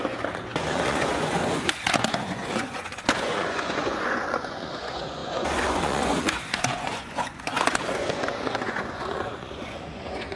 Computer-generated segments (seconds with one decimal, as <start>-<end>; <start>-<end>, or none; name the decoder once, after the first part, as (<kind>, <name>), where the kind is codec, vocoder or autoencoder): 0.0-10.4 (vocoder, Vocos)